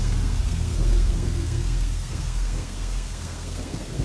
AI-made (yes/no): yes